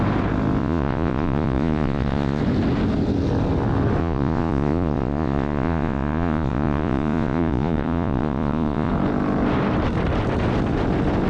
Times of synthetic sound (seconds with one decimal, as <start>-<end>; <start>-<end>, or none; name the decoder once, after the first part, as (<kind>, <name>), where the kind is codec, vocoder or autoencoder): 0.6-2.4 (vocoder, Vocos); 4.0-8.9